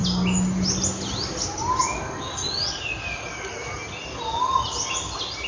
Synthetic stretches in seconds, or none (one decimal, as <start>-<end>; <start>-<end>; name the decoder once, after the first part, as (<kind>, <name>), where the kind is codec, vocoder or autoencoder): none